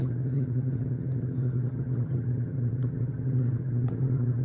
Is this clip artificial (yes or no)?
yes